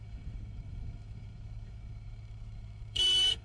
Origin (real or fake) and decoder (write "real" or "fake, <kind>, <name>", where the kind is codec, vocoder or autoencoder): fake, autoencoder, DAC-VAE